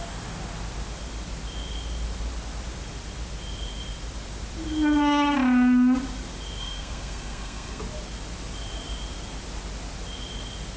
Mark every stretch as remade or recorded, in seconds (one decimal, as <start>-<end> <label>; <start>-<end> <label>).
0.0-6.6 recorded; 6.6-7.8 remade; 7.8-10.8 recorded